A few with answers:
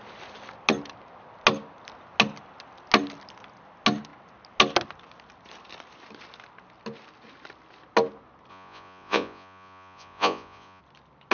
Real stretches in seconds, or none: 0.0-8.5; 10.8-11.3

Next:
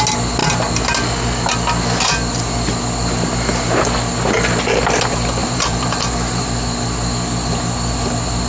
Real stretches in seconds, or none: 0.0-5.4; 6.6-8.5